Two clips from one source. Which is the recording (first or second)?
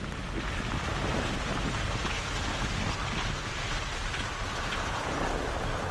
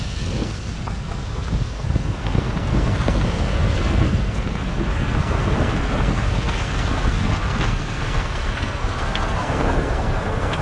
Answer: first